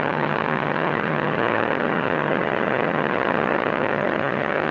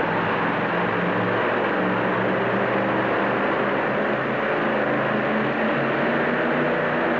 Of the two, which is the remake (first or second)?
first